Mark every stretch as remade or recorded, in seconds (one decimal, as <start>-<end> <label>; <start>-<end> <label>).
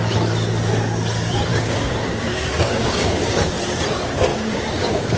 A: 0.0-1.5 recorded; 1.5-3.5 remade; 3.5-4.3 recorded; 4.3-5.2 remade